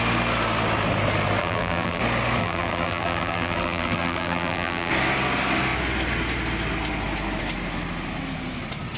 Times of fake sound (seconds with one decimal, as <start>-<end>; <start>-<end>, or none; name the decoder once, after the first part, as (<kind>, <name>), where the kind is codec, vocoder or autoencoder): 1.4-2.0 (vocoder, BigVGAN v2); 2.4-4.9